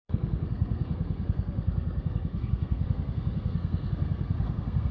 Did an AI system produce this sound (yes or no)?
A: yes